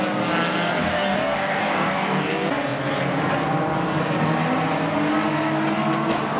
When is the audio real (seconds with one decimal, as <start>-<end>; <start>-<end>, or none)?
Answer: 0.0-0.8; 2.3-6.4